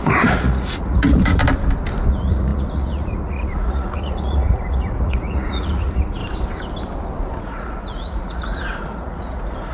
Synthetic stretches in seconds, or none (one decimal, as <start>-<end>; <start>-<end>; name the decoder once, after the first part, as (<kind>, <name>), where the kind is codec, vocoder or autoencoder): 0.0-1.4 (vocoder, Vocos); 2.1-6.2; 7.4-9.7